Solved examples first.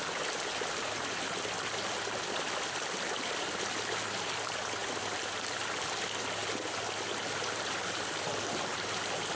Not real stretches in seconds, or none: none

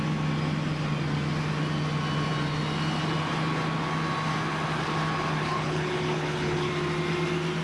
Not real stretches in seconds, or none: 5.4-6.7 (codec, HILCodec)